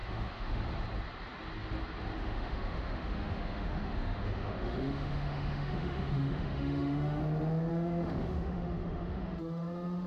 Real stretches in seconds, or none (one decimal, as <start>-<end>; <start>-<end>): 0.6-2.2; 7.2-7.7